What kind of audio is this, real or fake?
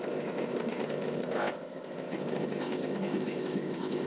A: fake